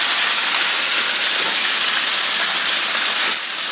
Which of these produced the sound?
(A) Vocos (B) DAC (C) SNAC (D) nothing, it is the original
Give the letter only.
D